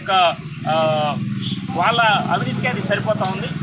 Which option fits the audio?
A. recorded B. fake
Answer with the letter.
A